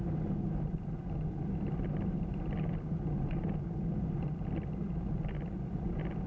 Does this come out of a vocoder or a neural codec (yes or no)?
no